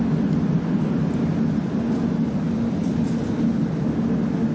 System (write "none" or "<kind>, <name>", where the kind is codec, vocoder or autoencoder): none